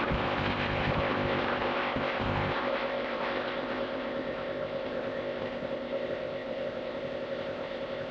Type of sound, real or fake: fake